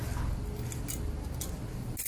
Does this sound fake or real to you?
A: real